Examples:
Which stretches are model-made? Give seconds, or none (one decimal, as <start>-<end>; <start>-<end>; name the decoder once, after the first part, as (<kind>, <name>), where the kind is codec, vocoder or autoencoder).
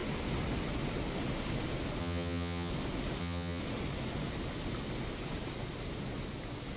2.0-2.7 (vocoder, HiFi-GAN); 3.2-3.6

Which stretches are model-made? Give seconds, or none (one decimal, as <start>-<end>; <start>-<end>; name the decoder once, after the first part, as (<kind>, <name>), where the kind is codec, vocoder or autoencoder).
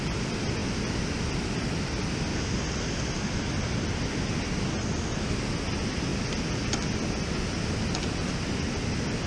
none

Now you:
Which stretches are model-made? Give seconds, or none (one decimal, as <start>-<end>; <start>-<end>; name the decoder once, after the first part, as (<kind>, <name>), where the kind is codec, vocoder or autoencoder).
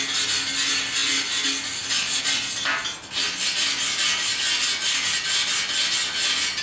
none